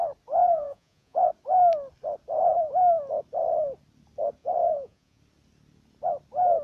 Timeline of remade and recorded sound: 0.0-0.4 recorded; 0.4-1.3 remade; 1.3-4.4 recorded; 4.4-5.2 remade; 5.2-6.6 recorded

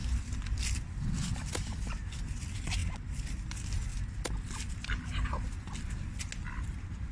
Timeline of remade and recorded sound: 0.0-7.1 recorded